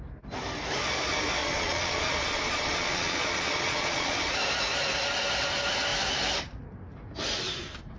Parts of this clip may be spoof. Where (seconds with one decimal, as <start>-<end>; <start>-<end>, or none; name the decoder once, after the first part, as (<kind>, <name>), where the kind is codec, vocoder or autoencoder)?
1.4-4.3 (vocoder, Vocos)